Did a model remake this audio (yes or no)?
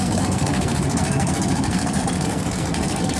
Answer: yes